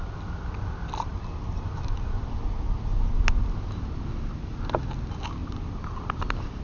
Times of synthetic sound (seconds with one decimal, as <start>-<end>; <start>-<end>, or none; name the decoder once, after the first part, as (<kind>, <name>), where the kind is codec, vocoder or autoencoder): none